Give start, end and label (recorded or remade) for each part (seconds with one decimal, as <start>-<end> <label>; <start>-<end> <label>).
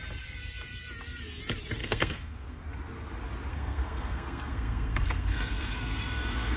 0.0-1.8 recorded; 1.8-2.6 remade; 2.6-3.5 recorded; 3.5-6.6 remade